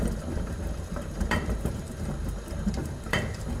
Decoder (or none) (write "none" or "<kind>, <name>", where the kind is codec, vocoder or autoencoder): vocoder, BigVGAN v2